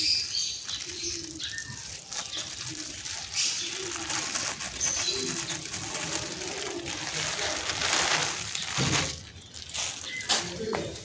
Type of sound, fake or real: real